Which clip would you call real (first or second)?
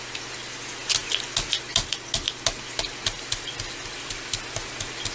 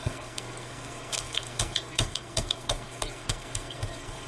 first